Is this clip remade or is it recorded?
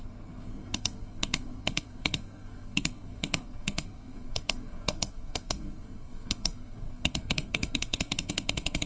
remade